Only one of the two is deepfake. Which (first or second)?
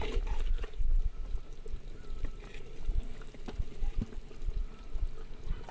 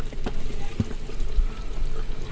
first